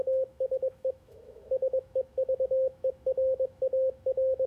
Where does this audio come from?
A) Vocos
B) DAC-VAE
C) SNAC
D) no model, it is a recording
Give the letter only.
B